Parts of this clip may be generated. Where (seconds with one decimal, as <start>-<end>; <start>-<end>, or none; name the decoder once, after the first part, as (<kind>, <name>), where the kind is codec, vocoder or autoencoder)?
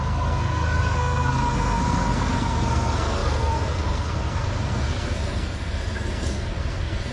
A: 0.0-7.1 (codec, SNAC)